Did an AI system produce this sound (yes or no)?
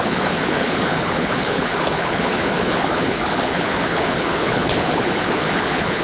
yes